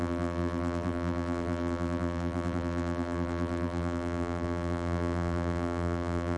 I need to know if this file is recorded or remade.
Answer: remade